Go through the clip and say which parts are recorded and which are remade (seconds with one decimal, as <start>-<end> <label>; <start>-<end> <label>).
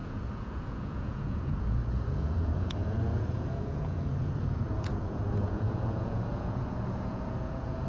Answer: 0.0-7.9 remade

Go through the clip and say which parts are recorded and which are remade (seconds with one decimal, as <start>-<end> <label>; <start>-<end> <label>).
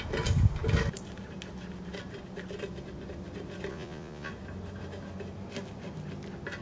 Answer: 0.0-3.7 recorded; 3.7-4.3 remade; 4.3-6.6 recorded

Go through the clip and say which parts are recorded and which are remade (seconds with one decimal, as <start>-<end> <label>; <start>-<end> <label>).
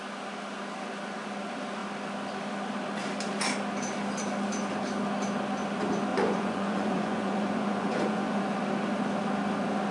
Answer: 0.0-6.1 recorded; 6.1-8.4 remade; 8.4-9.9 recorded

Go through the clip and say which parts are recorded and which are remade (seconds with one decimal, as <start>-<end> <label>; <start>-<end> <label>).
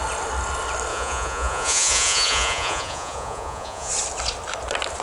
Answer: 0.0-0.9 recorded; 0.9-3.9 remade; 3.9-5.0 recorded